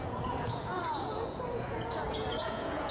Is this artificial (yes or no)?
yes